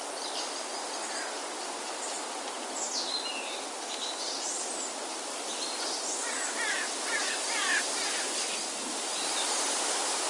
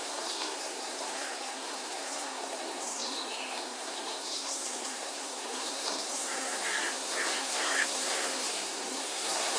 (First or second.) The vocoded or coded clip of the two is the second